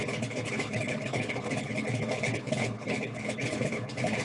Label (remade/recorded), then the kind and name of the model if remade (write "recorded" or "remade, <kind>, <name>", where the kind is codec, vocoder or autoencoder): remade, codec, HILCodec